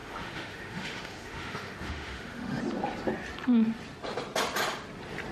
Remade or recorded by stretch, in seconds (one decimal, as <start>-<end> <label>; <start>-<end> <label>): 0.0-2.6 remade; 2.6-5.3 recorded